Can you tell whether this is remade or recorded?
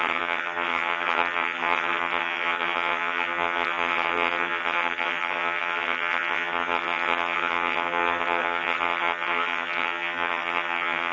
remade